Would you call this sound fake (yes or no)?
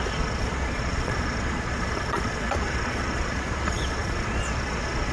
yes